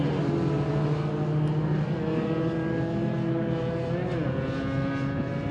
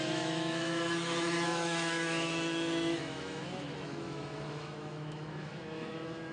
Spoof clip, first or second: second